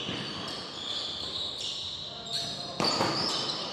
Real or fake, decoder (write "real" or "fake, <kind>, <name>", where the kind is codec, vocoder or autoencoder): real